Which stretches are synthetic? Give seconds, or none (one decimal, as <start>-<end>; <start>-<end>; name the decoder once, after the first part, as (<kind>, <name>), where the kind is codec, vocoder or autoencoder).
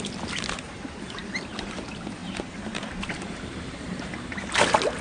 2.2-4.1 (vocoder, BigVGAN v2)